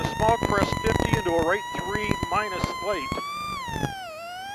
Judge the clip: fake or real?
real